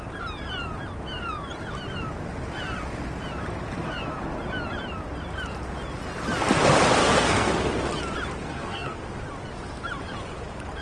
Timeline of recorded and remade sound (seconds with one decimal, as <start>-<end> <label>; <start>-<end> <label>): 0.0-7.0 recorded; 7.0-7.5 remade; 7.5-8.4 recorded; 8.4-9.0 remade; 9.0-10.8 recorded